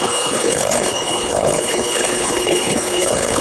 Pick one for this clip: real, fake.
fake